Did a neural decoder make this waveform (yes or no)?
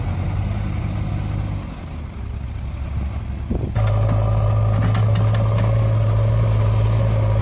no